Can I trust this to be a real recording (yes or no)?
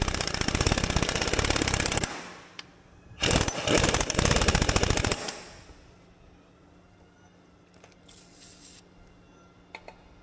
yes